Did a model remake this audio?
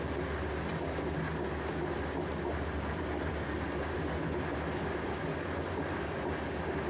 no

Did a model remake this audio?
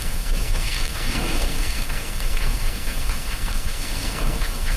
yes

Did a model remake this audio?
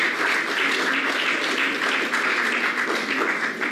no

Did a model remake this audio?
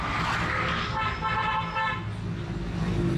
no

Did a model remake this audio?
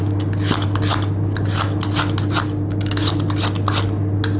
no